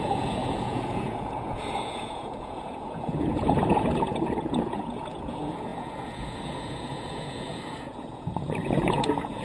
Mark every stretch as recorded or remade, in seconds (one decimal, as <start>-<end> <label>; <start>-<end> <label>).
0.0-9.4 remade